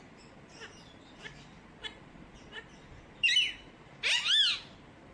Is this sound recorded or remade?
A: recorded